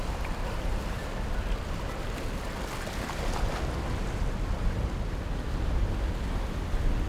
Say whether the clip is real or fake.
real